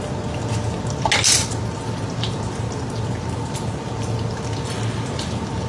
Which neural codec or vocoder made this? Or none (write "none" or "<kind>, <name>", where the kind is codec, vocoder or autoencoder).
none